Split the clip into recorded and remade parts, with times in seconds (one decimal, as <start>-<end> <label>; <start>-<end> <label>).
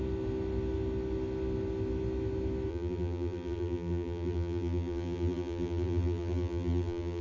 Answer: 0.0-2.7 recorded; 2.7-7.2 remade